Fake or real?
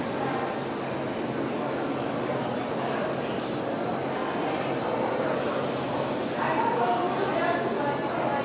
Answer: real